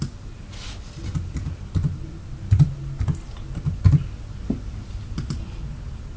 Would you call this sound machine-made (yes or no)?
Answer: no